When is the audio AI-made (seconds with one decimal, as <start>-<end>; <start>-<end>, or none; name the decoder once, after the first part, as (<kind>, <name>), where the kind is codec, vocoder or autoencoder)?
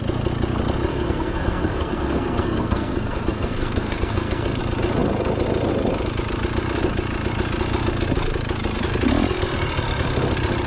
0.9-4.6 (codec, SNAC)